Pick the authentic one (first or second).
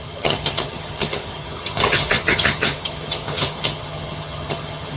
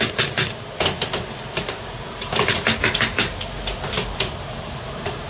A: second